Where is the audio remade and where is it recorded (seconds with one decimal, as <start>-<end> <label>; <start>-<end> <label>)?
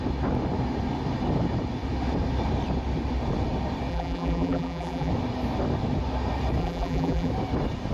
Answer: 0.0-3.9 recorded; 3.9-5.1 remade; 5.1-6.6 recorded; 6.6-7.3 remade; 7.3-7.9 recorded